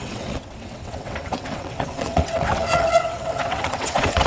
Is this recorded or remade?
remade